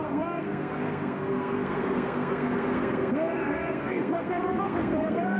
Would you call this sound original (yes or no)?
no